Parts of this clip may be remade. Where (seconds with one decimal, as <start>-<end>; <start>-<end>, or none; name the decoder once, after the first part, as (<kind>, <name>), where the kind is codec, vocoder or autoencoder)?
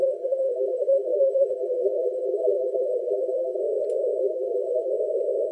0.0-3.6 (vocoder, BigVGAN v2); 4.2-4.9